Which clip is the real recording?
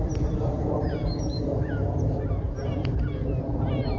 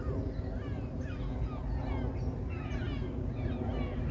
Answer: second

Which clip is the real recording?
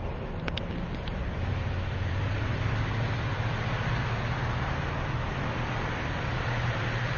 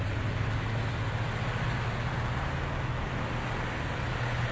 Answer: second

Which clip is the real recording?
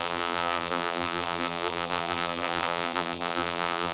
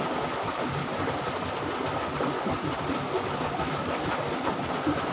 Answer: second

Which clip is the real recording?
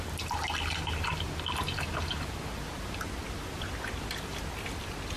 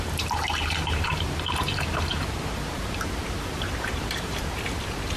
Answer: first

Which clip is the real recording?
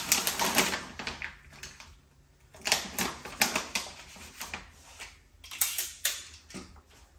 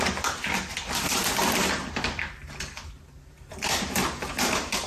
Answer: first